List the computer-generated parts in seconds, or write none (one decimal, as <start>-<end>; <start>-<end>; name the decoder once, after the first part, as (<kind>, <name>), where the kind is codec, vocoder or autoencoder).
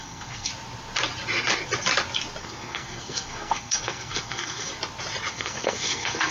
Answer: 0.0-0.5 (codec, SNAC); 2.4-4.7; 5.3-6.3